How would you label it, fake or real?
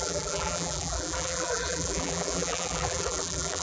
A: fake